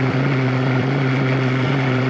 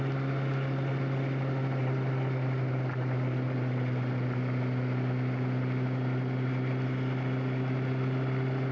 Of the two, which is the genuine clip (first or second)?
second